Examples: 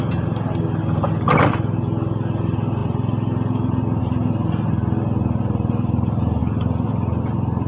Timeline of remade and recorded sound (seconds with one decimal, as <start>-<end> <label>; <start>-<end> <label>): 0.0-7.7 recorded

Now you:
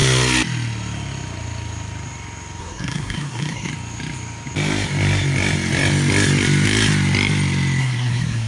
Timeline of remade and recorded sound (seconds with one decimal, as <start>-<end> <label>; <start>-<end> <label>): 0.0-2.6 recorded; 2.6-3.7 remade; 3.7-7.8 recorded; 7.8-8.5 remade

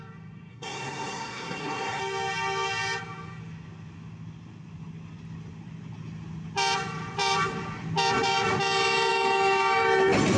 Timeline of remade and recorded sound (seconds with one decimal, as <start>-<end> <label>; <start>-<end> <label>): 0.0-0.5 recorded; 0.5-2.0 remade; 2.0-10.4 recorded

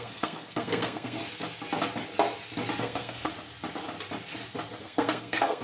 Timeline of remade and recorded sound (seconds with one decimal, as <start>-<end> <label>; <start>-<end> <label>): 0.0-1.2 remade; 1.2-2.8 recorded; 2.8-3.3 remade; 3.3-4.8 recorded; 4.8-5.6 remade

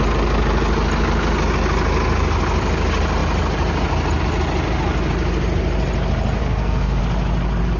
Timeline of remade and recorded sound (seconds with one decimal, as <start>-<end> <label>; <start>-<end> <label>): 0.0-6.4 recorded; 6.4-7.0 remade; 7.0-7.8 recorded